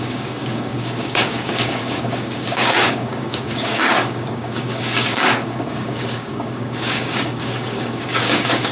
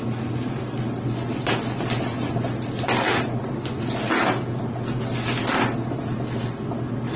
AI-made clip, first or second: first